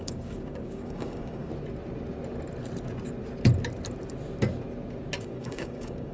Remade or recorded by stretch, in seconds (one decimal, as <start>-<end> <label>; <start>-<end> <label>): 0.0-1.5 remade; 1.5-5.2 recorded; 5.2-6.1 remade